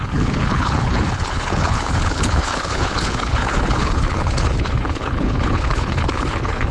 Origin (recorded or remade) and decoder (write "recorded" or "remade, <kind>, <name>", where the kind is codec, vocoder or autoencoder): remade, codec, HILCodec